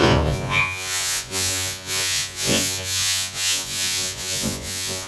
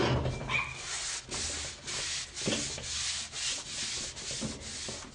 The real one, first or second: second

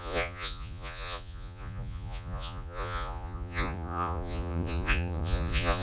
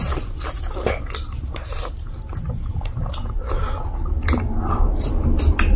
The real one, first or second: second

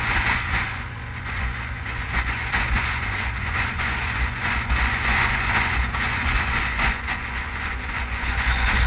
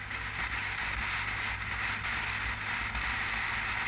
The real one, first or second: second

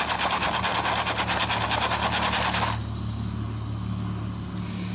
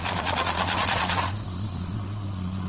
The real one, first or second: first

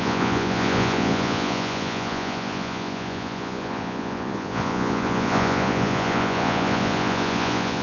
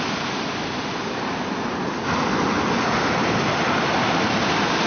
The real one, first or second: second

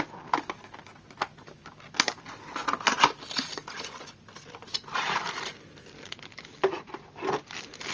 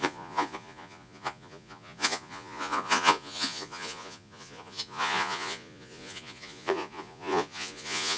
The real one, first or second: first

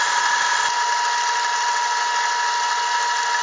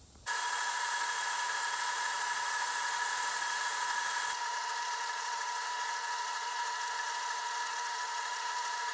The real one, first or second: first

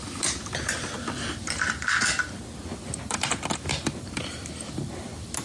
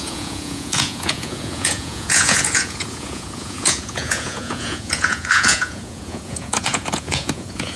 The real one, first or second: first